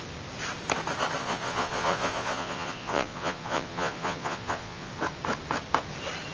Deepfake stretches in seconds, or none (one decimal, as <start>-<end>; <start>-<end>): 1.2-5.0

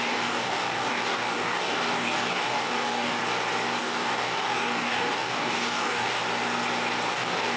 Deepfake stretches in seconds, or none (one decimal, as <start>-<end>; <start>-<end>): 0.0-3.2; 3.8-6.2; 7.1-7.6